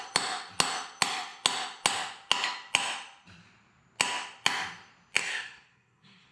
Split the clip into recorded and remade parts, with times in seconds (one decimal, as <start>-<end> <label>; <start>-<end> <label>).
0.0-5.2 recorded; 5.2-6.3 remade